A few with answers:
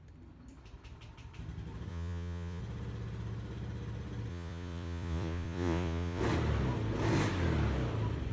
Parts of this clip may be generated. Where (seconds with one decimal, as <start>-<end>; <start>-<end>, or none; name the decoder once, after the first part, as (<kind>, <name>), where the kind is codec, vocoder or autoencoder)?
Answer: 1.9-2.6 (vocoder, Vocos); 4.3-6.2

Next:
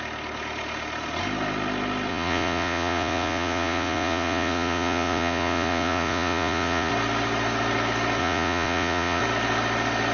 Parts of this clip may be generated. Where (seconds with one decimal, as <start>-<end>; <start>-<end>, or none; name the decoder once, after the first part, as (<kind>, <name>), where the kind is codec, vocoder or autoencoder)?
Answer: 2.1-6.9 (vocoder, Vocos); 8.2-9.2

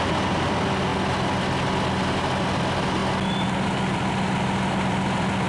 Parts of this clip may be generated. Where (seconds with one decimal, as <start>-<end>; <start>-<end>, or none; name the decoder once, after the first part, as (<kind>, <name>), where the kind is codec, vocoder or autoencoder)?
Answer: none

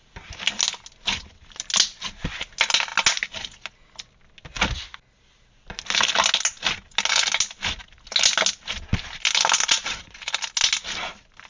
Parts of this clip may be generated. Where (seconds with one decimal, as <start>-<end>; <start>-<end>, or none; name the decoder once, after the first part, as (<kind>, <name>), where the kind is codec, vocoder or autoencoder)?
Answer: none